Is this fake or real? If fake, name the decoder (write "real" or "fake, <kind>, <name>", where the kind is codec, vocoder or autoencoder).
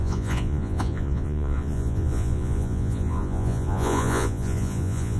fake, vocoder, Vocos